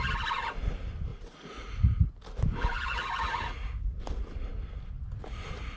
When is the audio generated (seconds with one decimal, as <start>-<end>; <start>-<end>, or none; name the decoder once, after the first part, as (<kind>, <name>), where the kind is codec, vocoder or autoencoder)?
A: 1.1-2.1 (vocoder, Vocos); 2.7-3.7